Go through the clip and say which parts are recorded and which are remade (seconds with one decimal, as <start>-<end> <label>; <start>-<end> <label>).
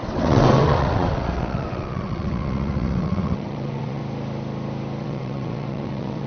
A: 0.0-4.0 remade; 4.0-5.0 recorded; 5.0-6.3 remade